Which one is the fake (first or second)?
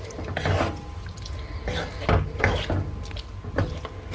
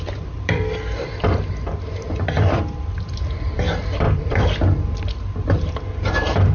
second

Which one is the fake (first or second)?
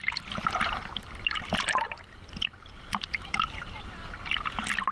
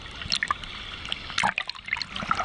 first